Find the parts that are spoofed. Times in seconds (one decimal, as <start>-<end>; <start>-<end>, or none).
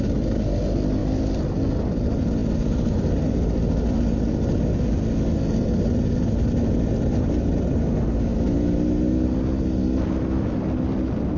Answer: none